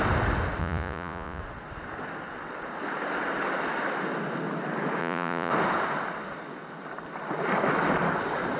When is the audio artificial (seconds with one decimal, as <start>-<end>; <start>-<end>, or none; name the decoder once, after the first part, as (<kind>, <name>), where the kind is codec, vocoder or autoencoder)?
0.6-1.4 (vocoder, Vocos); 5.0-5.5